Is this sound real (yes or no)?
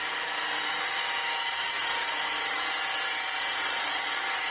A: yes